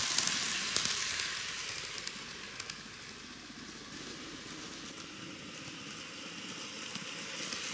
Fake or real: real